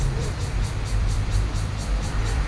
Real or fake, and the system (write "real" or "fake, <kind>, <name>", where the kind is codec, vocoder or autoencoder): fake, vocoder, BigVGAN v2